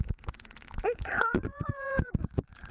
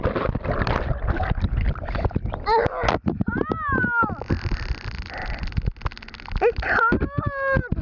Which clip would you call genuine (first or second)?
second